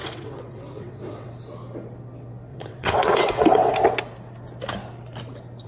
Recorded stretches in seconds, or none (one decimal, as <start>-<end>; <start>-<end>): 1.3-2.5; 3.7-5.7